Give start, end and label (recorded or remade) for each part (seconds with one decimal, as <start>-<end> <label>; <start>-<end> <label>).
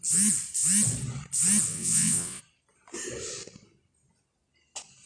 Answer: 0.0-1.7 recorded; 1.7-2.4 remade; 2.4-5.1 recorded